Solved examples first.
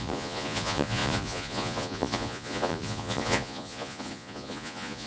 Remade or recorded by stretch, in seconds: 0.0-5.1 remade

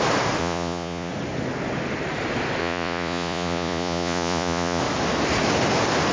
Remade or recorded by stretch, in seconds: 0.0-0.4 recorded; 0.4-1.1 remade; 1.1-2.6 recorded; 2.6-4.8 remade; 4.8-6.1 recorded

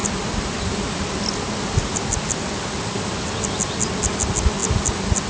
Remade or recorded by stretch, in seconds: 0.0-5.3 recorded

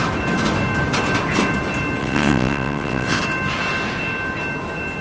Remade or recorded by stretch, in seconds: 0.0-2.0 recorded; 2.0-3.2 remade; 3.2-5.0 recorded

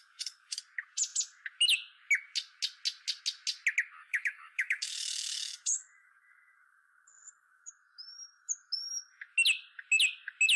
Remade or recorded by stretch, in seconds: 0.0-0.6 remade; 0.6-4.0 recorded; 4.0-7.7 remade; 7.7-10.6 recorded

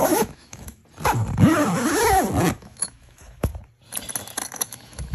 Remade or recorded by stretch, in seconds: 0.0-0.8 remade; 0.8-2.5 recorded; 2.5-3.5 remade; 3.5-4.5 recorded; 4.5-5.1 remade